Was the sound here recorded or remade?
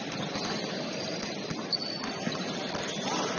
recorded